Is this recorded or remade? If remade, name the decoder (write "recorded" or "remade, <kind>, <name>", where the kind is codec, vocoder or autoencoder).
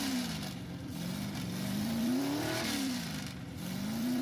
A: remade, vocoder, BigVGAN v2